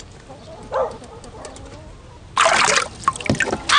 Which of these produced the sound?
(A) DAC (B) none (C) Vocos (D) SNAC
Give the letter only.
B